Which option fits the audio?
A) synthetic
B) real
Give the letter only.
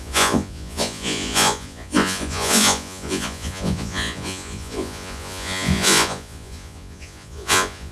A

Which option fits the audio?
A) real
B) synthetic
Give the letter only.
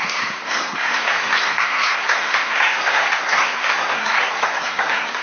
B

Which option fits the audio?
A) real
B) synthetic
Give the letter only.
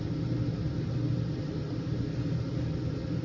A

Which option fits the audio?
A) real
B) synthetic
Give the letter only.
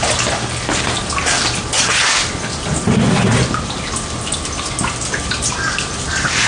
A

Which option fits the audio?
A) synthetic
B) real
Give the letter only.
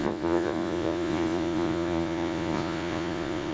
A